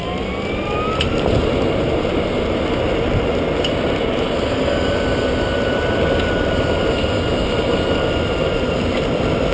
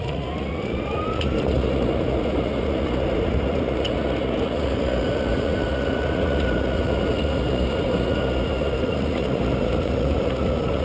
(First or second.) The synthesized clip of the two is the second